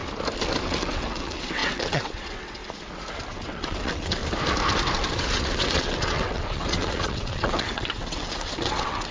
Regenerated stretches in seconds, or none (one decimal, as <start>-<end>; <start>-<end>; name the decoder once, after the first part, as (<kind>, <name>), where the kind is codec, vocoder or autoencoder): 0.6-2.6 (vocoder, WaveNeXt); 3.3-4.2; 5.2-9.1